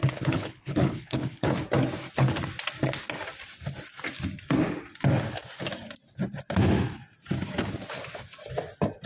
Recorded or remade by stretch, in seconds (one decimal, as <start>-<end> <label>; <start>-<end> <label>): 0.0-1.5 remade; 1.5-9.1 recorded